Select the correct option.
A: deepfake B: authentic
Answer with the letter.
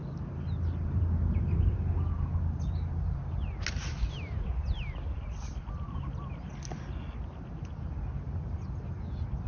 B